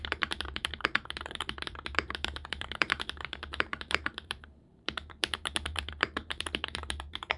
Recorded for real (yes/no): no